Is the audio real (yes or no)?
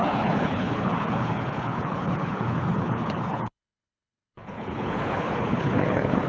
no